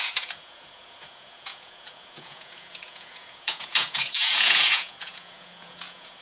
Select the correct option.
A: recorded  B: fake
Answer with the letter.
B